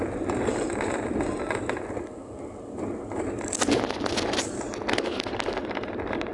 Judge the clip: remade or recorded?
recorded